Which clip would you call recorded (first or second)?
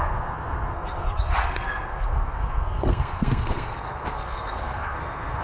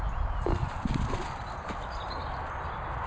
second